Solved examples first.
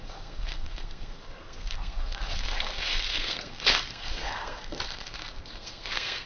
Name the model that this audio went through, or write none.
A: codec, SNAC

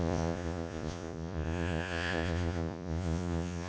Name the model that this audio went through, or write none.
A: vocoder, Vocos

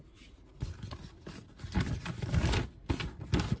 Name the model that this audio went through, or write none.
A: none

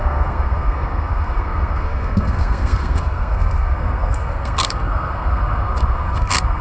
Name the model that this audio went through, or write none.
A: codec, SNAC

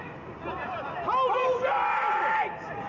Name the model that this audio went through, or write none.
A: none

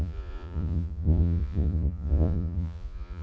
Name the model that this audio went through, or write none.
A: vocoder, Vocos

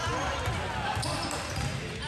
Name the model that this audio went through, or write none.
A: none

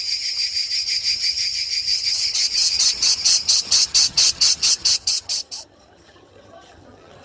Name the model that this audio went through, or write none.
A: vocoder, HiFi-GAN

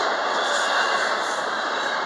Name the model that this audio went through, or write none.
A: none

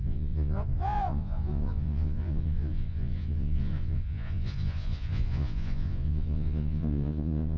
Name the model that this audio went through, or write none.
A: vocoder, Vocos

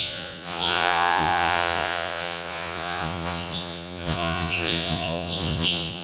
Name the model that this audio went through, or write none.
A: vocoder, Vocos